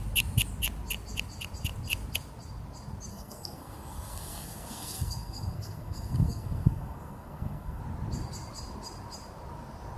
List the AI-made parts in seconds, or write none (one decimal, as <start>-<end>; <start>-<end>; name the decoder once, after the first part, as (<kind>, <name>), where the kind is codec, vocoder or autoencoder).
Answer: 3.1-7.8 (codec, SNAC)